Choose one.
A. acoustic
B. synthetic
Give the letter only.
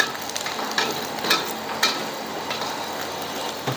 A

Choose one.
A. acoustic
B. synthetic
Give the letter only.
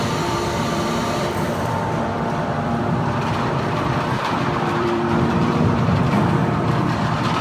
B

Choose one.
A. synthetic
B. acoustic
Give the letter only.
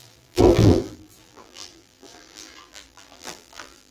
A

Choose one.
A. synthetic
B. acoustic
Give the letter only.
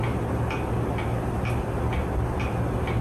B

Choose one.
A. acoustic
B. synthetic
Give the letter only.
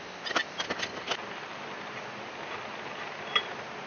A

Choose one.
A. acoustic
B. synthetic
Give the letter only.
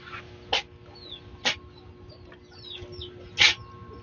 A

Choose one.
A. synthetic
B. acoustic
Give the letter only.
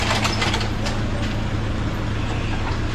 B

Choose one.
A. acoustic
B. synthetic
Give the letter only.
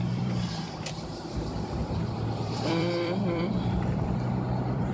B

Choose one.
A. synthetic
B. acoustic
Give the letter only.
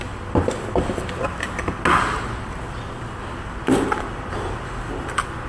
B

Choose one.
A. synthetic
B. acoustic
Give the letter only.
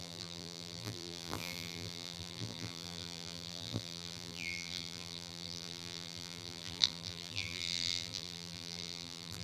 A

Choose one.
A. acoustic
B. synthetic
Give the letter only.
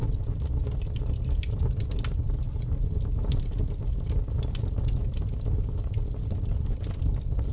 A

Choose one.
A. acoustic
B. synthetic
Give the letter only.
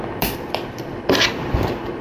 B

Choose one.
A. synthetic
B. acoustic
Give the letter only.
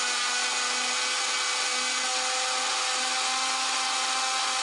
B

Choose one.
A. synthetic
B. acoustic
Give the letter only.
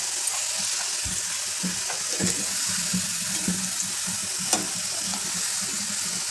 B